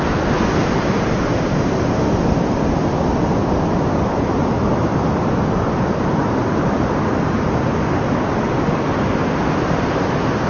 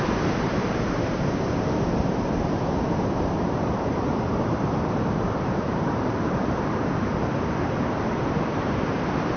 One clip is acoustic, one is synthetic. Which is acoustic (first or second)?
first